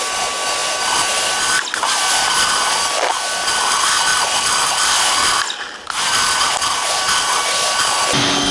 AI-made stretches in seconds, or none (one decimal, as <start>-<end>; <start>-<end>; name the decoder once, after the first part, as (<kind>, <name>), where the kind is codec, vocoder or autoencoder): none